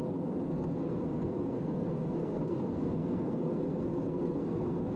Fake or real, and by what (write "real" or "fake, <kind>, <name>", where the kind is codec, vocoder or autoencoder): fake, codec, SNAC